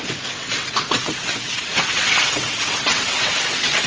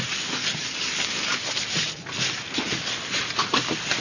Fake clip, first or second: first